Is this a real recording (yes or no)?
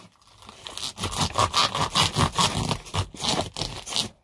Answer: yes